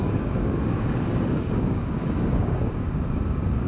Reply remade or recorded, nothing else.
remade